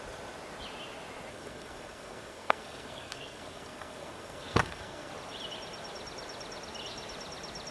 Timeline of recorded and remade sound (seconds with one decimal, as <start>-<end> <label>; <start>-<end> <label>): 0.0-1.3 recorded; 1.3-5.1 remade; 5.1-7.7 recorded